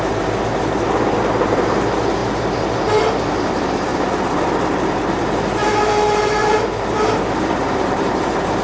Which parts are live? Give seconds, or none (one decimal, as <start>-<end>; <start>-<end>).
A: none